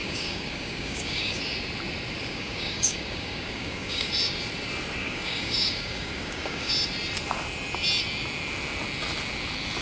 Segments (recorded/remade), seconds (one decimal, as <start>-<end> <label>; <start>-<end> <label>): 0.0-1.4 remade; 1.4-2.2 recorded; 2.2-4.1 remade; 4.1-5.0 recorded; 5.0-6.7 remade; 6.7-9.8 recorded